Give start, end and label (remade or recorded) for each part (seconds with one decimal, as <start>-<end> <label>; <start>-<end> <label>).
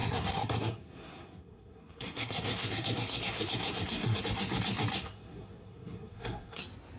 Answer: 0.0-4.2 remade; 4.2-5.0 recorded; 5.0-6.6 remade; 6.6-7.0 recorded